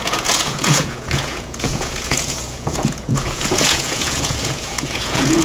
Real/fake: fake